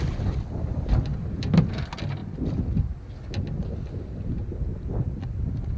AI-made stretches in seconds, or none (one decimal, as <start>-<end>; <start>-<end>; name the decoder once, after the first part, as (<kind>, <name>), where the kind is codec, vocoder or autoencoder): none

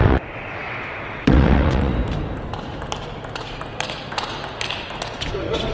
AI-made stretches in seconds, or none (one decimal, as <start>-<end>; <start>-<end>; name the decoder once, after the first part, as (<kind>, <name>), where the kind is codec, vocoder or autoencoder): 0.0-1.9 (vocoder, WaveNeXt); 5.3-5.7

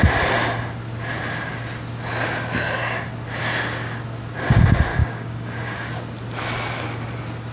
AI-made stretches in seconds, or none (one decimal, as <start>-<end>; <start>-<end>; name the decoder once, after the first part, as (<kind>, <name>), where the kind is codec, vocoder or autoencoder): 4.9-5.9 (codec, DAC)

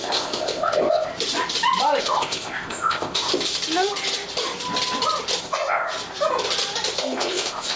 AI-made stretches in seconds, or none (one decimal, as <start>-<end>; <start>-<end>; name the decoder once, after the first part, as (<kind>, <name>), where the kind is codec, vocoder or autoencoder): 0.0-1.1 (codec, ZipCodec); 2.0-3.3; 5.4-5.9; 7.0-7.8

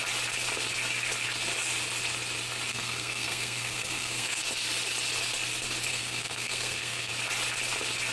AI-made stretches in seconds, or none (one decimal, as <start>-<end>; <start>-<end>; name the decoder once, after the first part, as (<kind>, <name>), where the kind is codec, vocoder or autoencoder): 2.7-4.4 (codec, SNAC); 5.9-7.1

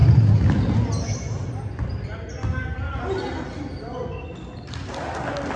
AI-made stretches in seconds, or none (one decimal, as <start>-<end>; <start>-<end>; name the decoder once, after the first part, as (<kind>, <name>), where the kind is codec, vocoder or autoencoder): none